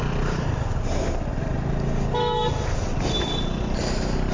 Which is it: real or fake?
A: real